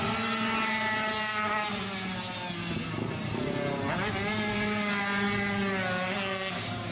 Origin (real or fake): real